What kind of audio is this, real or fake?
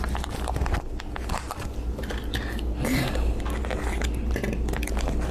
real